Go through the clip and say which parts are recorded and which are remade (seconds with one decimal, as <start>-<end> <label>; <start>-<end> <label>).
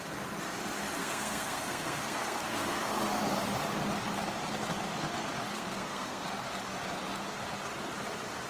0.0-1.0 recorded; 1.0-2.8 remade; 2.8-5.5 recorded; 5.5-6.2 remade; 6.2-8.5 recorded